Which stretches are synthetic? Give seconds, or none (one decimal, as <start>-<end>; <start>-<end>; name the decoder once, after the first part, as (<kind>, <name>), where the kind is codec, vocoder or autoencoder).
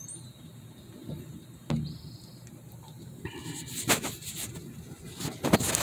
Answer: none